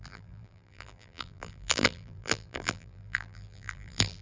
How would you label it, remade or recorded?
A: remade